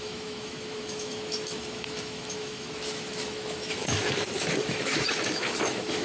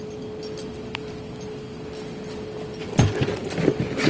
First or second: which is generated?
first